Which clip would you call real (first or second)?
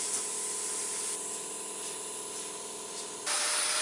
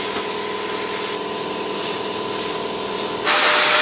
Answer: second